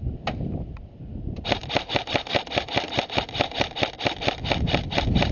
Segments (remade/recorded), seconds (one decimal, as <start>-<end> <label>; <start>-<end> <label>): 0.0-5.3 recorded